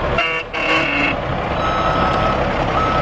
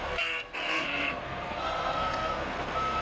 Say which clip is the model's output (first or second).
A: second